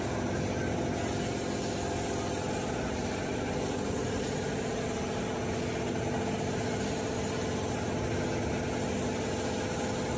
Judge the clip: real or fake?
real